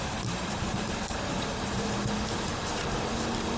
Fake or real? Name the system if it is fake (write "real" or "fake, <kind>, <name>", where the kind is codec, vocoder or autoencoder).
fake, vocoder, BigVGAN v2